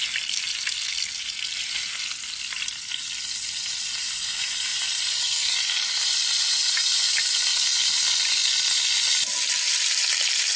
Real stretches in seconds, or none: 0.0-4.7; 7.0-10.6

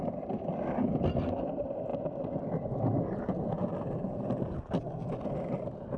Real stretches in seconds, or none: 0.0-6.0